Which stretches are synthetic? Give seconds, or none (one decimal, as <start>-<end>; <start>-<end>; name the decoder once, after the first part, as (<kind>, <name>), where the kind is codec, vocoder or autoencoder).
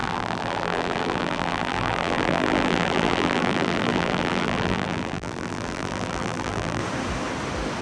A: 0.0-6.8 (vocoder, BigVGAN v2)